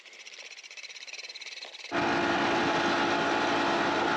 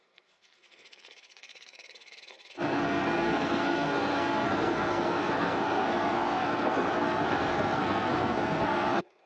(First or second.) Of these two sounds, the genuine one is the first